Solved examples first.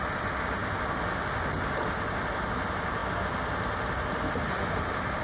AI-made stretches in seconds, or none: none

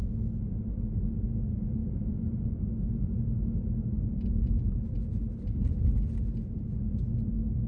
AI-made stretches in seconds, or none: none